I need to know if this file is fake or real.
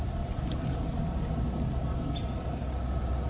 real